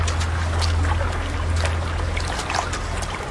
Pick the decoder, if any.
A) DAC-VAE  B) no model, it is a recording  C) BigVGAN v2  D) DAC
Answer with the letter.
B